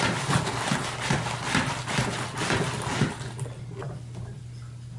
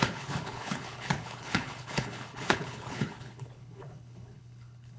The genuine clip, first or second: first